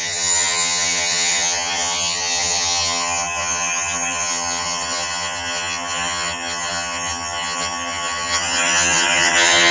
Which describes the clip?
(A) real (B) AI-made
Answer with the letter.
B